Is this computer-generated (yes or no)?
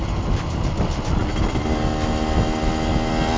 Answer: no